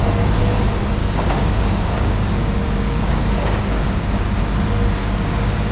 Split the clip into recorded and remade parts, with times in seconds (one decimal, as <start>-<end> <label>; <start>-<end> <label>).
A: 0.0-1.0 recorded; 1.0-4.4 remade; 4.4-5.0 recorded; 5.0-5.7 remade